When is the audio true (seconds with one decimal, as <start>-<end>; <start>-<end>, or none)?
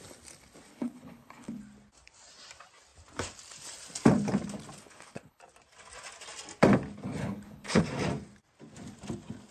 0.0-0.7; 1.6-4.8; 5.4-7.2; 7.8-9.5